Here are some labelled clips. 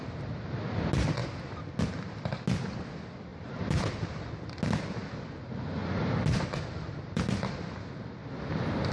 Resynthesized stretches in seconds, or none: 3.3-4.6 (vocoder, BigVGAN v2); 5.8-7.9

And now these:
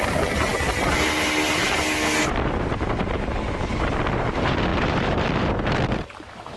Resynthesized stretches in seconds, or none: none